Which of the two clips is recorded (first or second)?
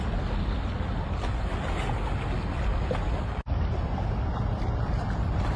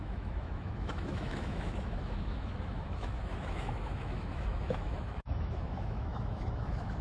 first